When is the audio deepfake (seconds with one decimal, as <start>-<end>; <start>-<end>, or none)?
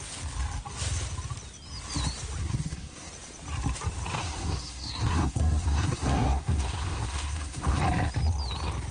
2.4-3.1; 4.2-7.8